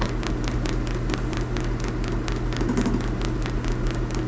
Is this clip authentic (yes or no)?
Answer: yes